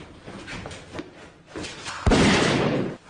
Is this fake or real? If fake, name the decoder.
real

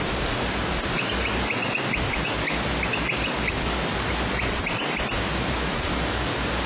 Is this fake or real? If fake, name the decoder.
real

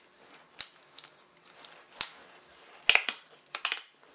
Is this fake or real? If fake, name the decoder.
real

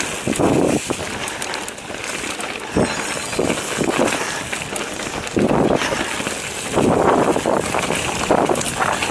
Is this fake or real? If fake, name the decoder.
real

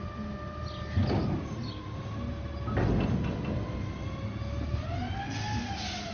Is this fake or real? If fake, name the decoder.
real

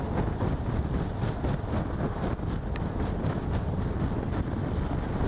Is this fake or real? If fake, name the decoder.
real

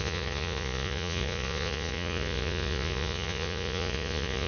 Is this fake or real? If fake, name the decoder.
fake, vocoder, Vocos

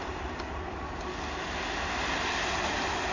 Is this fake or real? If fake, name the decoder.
real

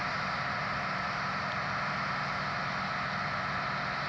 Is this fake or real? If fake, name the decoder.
real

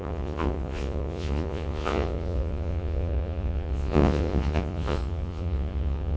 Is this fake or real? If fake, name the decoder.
fake, vocoder, Vocos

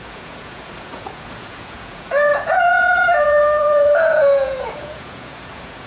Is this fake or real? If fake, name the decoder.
fake, vocoder, Vocos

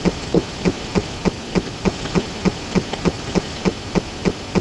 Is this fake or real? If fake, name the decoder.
real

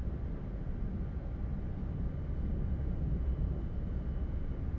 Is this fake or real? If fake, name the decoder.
real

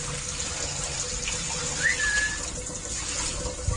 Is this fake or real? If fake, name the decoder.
real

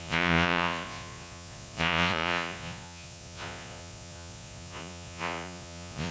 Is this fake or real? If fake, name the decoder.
fake, vocoder, Vocos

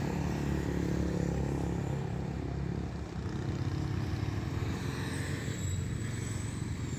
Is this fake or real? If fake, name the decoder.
real